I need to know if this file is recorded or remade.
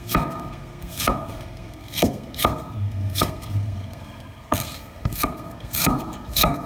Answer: remade